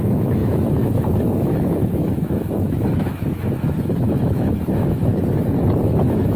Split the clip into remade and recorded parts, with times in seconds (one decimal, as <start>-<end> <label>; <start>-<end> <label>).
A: 0.0-5.1 remade; 5.1-5.8 recorded; 5.8-6.4 remade